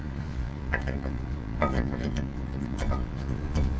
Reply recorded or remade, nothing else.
remade